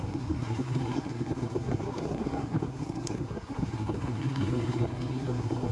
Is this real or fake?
fake